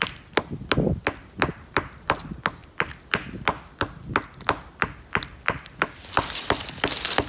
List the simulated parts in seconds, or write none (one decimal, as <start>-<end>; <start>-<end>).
none

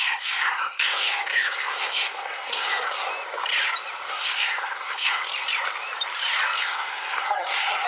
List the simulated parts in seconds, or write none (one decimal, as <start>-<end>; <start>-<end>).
0.0-3.1; 4.1-5.3; 6.6-7.9

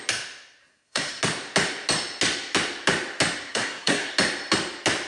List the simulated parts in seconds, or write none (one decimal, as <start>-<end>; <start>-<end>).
0.6-1.2; 3.5-4.1

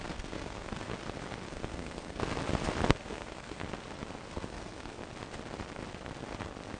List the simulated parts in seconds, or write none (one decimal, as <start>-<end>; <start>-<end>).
0.0-0.9; 1.5-2.2; 2.9-3.6; 4.3-5.0

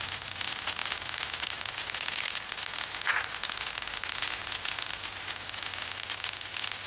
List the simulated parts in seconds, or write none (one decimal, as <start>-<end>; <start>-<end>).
none

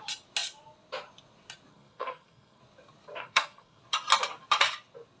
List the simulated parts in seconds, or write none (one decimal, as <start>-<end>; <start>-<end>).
1.7-2.6; 3.2-3.8